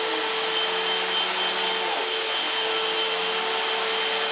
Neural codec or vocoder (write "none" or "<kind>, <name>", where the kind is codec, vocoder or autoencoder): none